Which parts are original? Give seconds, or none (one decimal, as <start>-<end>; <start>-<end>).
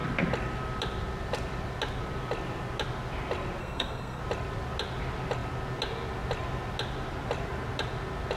0.0-3.6; 4.2-8.4